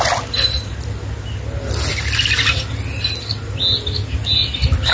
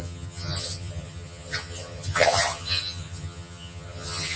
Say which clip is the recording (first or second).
first